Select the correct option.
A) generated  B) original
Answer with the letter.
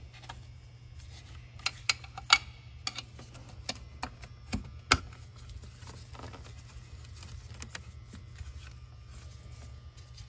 B